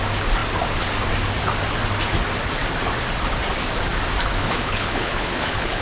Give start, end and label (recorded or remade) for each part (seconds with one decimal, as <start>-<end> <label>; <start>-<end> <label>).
0.0-4.4 recorded; 4.4-5.8 remade